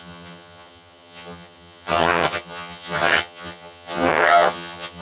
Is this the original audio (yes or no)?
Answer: no